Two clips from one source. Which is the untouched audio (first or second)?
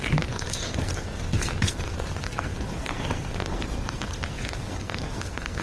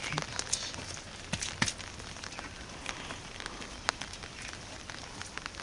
second